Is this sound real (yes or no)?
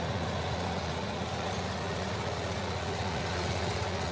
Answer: no